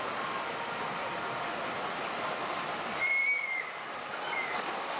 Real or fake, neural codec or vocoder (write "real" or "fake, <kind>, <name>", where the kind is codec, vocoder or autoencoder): real